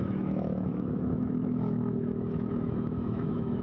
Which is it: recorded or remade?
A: remade